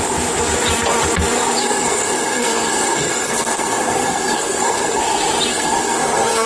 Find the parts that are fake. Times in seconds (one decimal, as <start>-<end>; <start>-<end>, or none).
1.6-5.0; 5.5-6.5